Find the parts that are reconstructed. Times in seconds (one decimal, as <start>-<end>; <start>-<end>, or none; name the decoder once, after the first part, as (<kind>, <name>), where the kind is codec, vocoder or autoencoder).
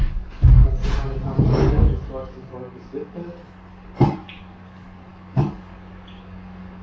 0.0-0.8 (codec, DAC); 1.4-3.2; 4.4-6.8